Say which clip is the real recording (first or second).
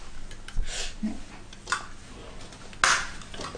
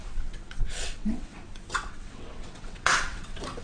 first